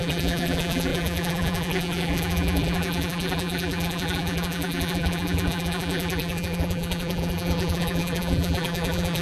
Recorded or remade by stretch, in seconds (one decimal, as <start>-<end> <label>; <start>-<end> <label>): 0.0-9.2 remade